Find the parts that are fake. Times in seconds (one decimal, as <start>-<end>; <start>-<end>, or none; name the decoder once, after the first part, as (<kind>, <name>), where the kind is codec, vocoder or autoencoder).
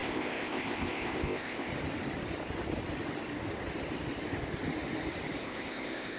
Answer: 0.0-1.7 (codec, ZipCodec); 5.4-6.2